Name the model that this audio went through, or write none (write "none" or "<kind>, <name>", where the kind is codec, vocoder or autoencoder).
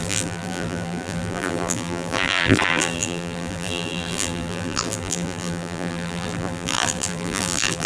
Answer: vocoder, BigVGAN v2